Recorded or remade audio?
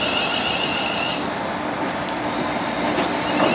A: recorded